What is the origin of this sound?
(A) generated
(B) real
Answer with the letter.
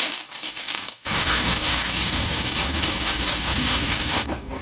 A